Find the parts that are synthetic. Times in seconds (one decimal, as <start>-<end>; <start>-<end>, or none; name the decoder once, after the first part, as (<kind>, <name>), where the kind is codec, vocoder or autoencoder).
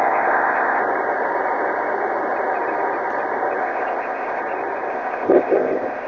0.0-0.8 (codec, ZipCodec); 3.6-4.4; 4.9-6.1